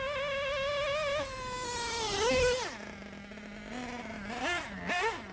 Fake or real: real